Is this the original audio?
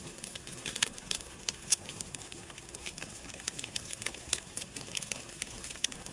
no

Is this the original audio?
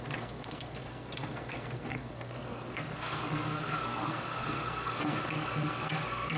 no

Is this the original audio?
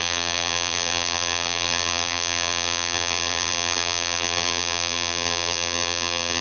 no